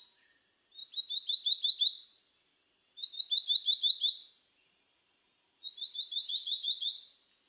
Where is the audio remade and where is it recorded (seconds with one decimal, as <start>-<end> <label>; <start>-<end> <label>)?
0.0-7.5 recorded